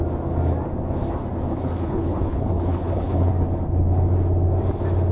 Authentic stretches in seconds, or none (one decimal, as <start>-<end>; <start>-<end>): 0.0-1.5; 3.3-5.1